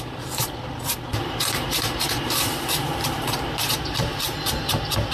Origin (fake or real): fake